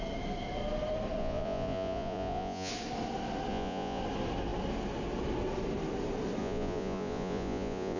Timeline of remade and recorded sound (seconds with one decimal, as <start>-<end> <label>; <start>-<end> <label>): 0.0-1.2 recorded; 1.2-2.7 remade; 2.7-3.5 recorded; 3.5-4.0 remade; 4.0-6.4 recorded; 6.4-8.0 remade